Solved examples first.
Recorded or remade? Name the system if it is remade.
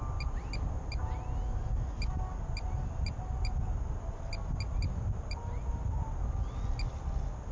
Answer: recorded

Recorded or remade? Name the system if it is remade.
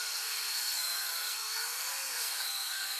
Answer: remade, codec, SNAC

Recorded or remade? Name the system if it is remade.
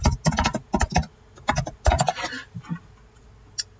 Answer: recorded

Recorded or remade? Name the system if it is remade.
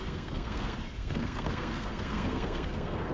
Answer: remade, codec, SNAC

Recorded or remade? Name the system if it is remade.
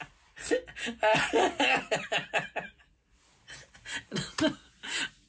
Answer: recorded